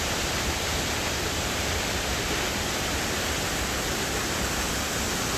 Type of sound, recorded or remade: recorded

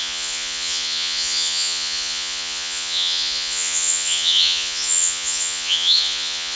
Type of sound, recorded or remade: remade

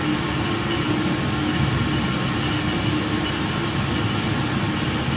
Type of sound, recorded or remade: recorded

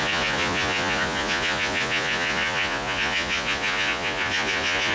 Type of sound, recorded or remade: remade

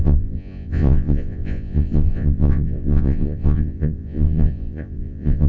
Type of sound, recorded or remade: remade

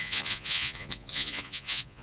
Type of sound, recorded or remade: remade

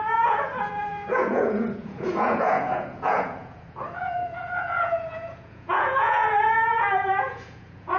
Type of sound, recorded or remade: remade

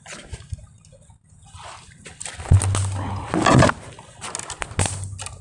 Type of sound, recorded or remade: recorded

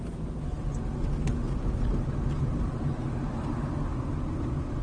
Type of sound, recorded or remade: recorded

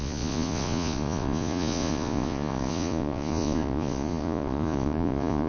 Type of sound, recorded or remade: remade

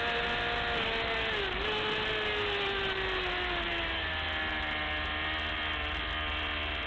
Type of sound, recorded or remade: recorded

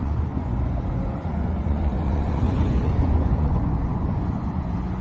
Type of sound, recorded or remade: remade